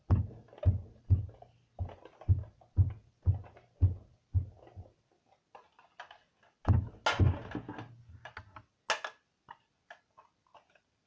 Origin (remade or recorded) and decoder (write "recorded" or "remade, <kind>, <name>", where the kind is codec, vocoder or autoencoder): recorded